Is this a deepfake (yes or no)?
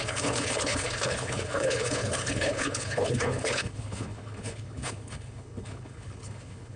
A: yes